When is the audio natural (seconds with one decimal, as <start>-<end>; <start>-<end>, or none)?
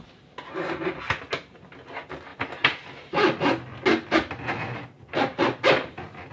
0.0-2.3